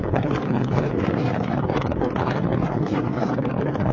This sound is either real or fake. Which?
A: fake